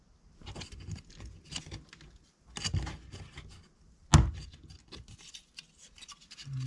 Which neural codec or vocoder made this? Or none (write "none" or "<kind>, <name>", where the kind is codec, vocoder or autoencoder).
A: none